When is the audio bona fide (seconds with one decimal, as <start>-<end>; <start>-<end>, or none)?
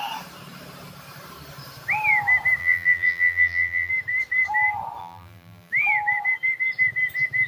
0.0-2.6; 3.9-5.0; 5.7-7.5